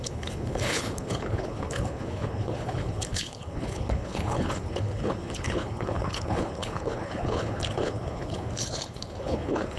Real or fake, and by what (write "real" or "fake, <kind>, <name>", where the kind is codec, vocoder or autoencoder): fake, codec, HILCodec